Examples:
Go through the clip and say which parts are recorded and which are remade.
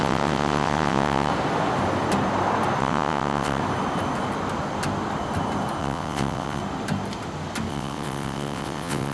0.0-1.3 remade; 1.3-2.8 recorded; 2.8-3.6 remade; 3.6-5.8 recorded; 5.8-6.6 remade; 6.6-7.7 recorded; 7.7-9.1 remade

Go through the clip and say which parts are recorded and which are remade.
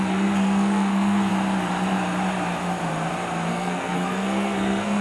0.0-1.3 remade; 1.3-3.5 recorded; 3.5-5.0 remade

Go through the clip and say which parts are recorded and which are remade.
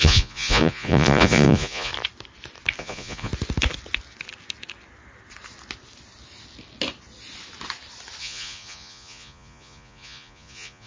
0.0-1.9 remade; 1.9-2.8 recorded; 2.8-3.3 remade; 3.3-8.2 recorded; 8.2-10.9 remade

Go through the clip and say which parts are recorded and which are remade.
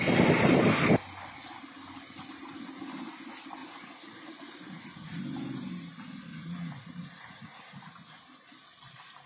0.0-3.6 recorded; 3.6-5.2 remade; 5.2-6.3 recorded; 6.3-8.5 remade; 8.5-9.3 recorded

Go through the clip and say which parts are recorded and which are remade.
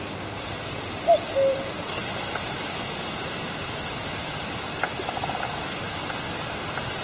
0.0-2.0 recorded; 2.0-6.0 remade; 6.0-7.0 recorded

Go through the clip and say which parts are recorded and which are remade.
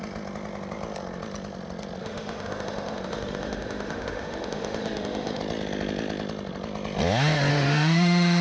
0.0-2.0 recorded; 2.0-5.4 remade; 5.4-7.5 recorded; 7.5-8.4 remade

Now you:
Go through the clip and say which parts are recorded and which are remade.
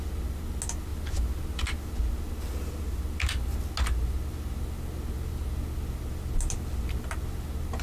0.0-7.8 recorded